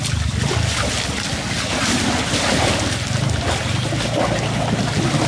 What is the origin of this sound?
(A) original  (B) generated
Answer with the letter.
A